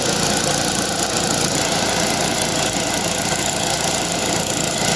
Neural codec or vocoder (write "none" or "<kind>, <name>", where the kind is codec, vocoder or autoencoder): none